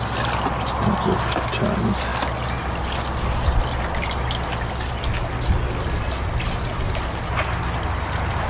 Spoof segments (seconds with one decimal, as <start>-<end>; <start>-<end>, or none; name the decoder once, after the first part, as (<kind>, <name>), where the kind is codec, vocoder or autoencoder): none